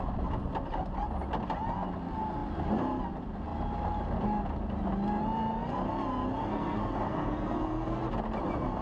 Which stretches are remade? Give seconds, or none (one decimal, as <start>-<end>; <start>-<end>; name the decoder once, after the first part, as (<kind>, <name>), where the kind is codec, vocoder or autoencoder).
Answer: 6.4-8.0 (codec, SNAC)